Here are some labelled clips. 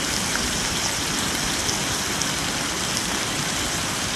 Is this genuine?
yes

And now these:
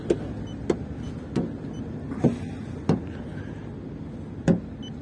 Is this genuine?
yes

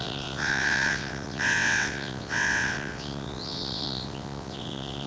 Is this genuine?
no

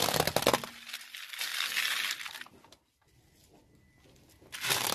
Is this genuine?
yes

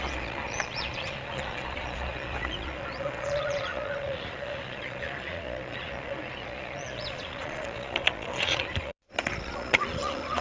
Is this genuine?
no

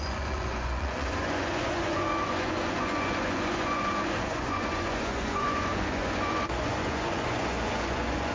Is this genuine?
no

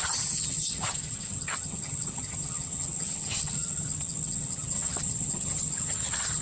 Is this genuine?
no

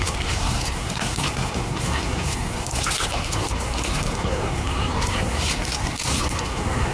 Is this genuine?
no